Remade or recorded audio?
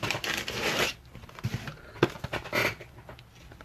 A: recorded